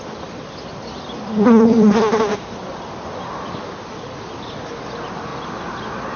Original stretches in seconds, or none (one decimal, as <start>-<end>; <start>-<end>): 0.0-6.2